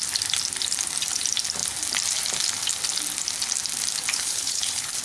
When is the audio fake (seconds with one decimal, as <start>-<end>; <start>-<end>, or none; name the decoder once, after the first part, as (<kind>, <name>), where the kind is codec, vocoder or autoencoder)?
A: 4.1-5.0 (codec, HILCodec)